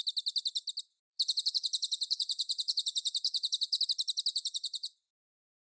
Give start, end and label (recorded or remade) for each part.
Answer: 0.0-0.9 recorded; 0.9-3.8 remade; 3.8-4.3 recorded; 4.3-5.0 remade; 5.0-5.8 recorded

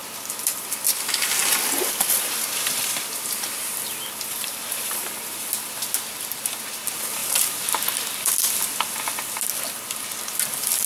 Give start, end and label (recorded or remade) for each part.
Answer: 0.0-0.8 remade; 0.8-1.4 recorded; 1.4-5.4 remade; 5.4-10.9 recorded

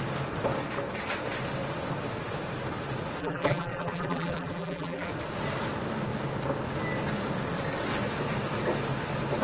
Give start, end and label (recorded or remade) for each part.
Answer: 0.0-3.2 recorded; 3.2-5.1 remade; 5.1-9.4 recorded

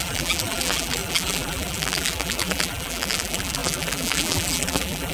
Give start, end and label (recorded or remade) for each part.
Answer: 0.0-5.1 remade

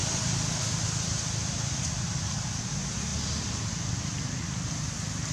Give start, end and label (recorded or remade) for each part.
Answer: 0.0-2.6 remade; 2.6-5.3 recorded